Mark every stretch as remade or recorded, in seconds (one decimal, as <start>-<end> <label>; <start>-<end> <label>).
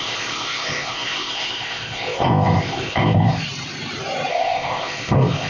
0.0-3.4 remade; 3.4-4.3 recorded; 4.3-5.5 remade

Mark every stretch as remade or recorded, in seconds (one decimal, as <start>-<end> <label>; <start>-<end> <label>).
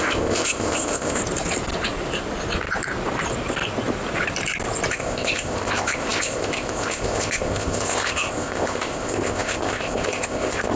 0.0-1.2 remade; 1.2-4.9 recorded; 4.9-10.8 remade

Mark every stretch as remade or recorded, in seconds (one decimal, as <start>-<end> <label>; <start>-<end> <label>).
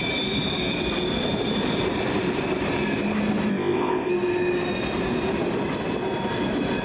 0.0-3.5 recorded; 3.5-4.1 remade; 4.1-6.8 recorded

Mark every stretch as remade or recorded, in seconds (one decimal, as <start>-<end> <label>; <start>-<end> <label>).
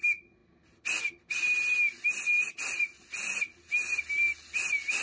0.0-5.0 recorded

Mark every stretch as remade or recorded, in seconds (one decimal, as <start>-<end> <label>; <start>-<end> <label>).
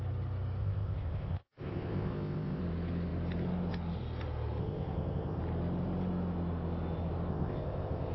0.0-0.6 recorded; 0.6-2.6 remade; 2.6-4.6 recorded; 4.6-5.4 remade; 5.4-7.3 recorded; 7.3-8.1 remade